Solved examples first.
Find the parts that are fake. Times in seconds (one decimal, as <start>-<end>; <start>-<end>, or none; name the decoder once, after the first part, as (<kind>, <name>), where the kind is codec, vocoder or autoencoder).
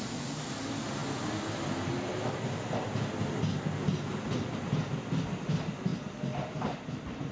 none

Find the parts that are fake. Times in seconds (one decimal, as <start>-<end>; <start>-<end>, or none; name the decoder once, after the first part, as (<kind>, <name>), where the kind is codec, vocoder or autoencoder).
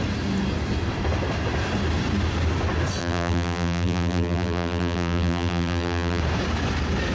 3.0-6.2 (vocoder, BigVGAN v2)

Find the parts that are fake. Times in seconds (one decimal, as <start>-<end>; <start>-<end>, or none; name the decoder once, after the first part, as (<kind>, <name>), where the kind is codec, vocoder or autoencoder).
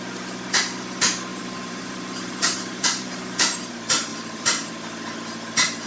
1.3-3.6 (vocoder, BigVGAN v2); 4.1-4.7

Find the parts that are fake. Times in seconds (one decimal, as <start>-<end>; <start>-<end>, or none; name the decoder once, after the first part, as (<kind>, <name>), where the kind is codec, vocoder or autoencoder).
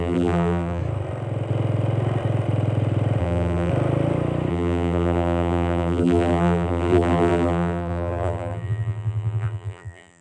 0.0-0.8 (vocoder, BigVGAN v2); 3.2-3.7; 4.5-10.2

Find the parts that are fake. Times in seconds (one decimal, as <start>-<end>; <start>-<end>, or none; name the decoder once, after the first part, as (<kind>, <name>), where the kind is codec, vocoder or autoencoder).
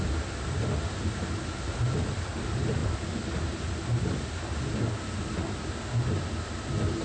none